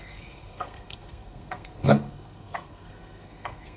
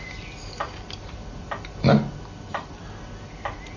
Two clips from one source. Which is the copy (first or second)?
first